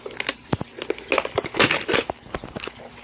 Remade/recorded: recorded